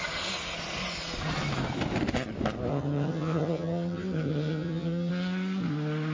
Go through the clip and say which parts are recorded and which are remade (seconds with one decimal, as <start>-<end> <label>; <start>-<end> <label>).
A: 0.0-2.7 recorded; 2.7-5.1 remade; 5.1-6.1 recorded